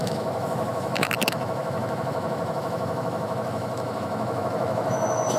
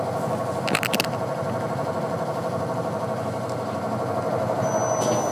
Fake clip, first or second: first